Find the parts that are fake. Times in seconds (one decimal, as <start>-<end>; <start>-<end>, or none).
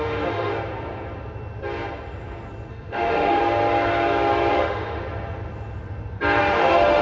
0.0-0.5; 2.7-3.4; 4.5-5.0; 6.4-7.0